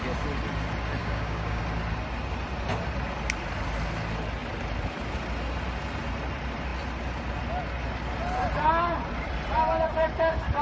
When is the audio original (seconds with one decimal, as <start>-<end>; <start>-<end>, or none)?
0.0-1.0; 1.6-10.6